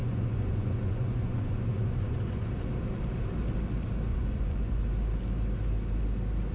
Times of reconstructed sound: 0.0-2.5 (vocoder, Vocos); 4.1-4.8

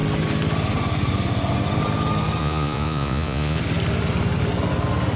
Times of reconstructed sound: 2.4-3.6 (vocoder, Vocos)